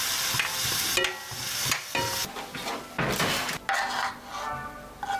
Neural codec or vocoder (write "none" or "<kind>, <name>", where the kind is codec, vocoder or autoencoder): none